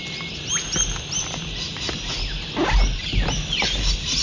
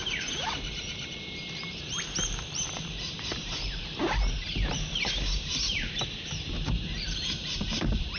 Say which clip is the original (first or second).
first